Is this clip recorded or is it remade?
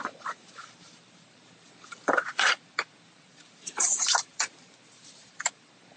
remade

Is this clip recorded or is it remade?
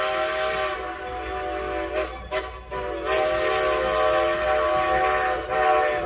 recorded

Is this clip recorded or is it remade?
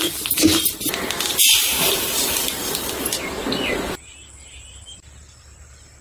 recorded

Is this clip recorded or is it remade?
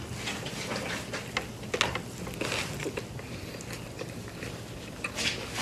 recorded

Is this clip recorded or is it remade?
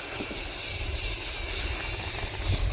recorded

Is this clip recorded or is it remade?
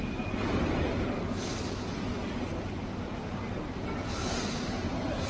recorded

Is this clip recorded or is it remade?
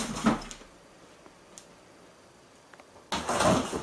recorded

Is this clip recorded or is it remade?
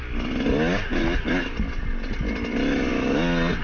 recorded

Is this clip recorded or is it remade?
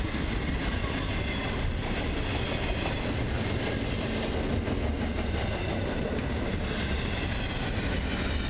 recorded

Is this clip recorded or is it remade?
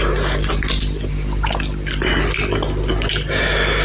recorded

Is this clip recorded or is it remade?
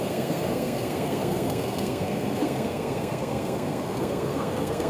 remade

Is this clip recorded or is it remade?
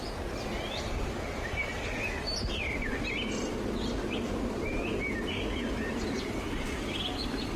remade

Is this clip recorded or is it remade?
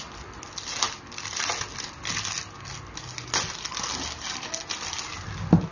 recorded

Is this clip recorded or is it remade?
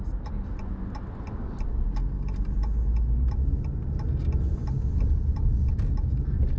recorded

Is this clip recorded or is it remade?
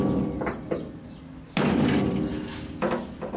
recorded